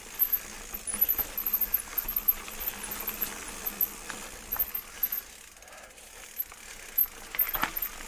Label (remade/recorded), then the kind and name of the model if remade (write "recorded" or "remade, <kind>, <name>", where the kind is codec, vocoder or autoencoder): recorded